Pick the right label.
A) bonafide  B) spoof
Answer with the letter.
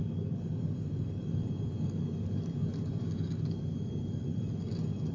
B